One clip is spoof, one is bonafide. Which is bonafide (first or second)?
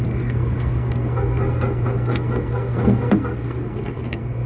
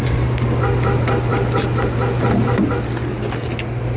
second